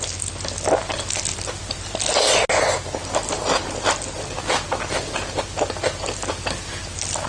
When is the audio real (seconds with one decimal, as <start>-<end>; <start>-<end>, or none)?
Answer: 0.0-7.3